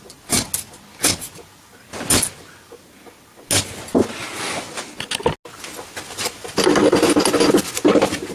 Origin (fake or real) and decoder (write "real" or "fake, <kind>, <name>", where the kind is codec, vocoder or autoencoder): real